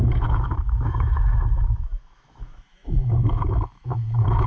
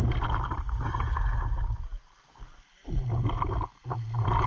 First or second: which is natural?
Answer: second